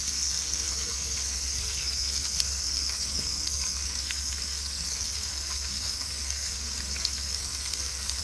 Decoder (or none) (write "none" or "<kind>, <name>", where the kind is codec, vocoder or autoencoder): codec, SNAC